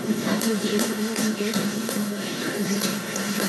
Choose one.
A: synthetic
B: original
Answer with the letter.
A